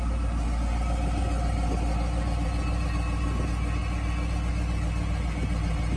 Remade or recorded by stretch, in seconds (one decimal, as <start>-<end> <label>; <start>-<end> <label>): 0.0-6.0 recorded